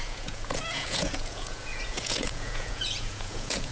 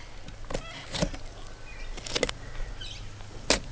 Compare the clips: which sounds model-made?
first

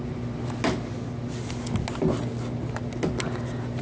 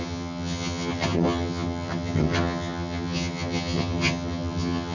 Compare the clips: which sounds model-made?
second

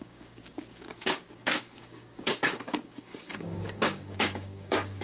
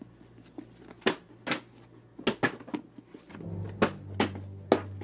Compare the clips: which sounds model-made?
first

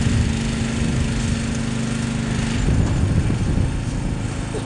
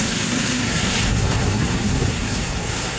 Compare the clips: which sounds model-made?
second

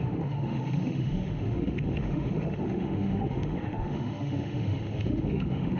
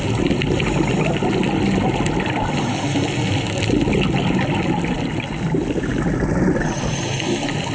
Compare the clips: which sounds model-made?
first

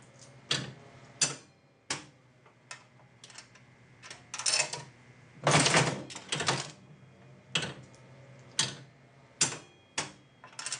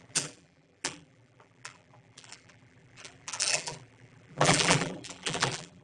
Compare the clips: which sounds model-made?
second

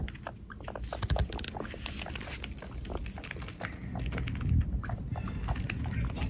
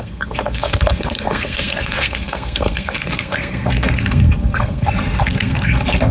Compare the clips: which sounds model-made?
second